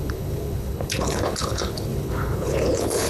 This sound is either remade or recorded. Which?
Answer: remade